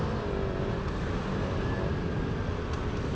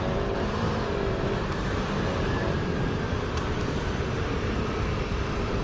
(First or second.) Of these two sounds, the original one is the first